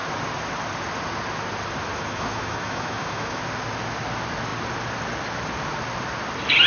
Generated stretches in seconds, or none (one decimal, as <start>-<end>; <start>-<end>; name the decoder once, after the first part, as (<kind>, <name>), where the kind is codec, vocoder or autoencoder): 1.9-3.4 (autoencoder, DAC-VAE)